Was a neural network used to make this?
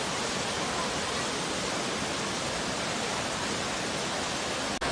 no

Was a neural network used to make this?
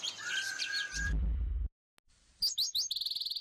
no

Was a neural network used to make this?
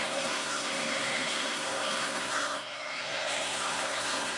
yes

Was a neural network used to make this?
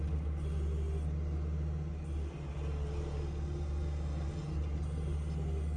no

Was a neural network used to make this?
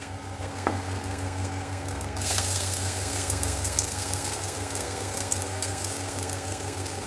yes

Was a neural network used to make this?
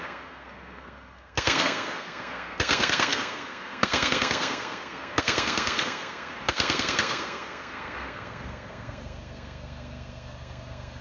yes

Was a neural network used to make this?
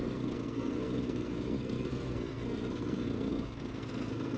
yes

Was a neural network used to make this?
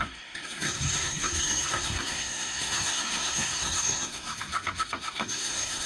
yes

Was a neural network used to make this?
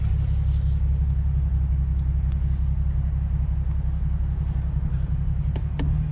no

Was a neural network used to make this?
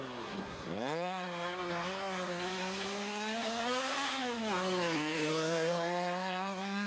yes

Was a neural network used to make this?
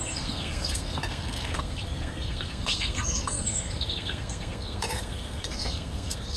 yes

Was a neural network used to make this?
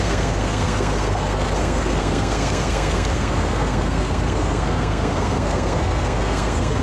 yes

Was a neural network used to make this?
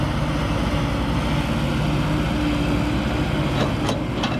no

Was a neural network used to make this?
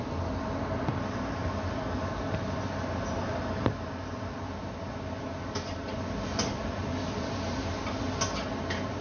no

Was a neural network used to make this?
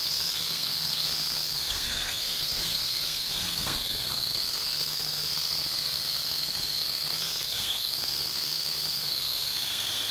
yes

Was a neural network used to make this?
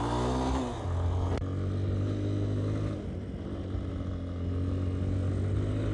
no